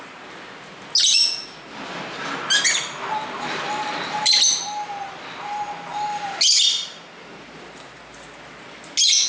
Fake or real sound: real